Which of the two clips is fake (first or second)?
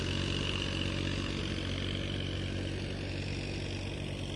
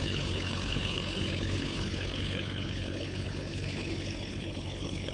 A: second